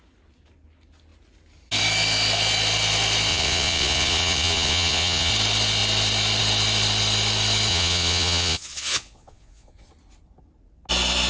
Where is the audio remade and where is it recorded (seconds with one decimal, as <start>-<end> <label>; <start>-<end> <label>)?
0.0-3.3 recorded; 3.3-5.3 remade; 5.3-7.7 recorded; 7.7-9.9 remade; 9.9-11.3 recorded

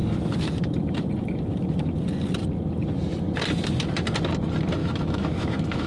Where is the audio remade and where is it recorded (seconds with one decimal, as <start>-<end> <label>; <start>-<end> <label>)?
0.0-4.8 recorded; 4.8-5.9 remade

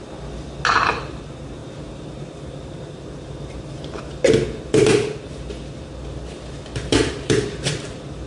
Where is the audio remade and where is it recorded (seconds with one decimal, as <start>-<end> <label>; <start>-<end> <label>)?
0.0-1.6 recorded; 1.6-4.2 remade; 4.2-8.3 recorded

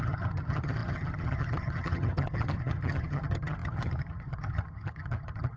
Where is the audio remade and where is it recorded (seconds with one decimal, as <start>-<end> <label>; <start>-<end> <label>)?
0.0-5.6 remade